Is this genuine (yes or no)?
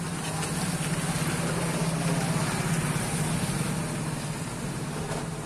yes